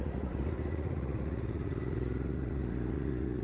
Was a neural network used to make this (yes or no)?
yes